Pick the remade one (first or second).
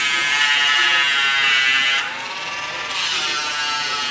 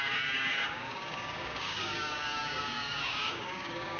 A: second